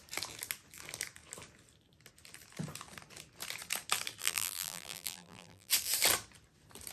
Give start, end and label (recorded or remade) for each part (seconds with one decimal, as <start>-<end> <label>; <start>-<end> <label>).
0.0-4.2 recorded; 4.2-5.7 remade; 5.7-6.9 recorded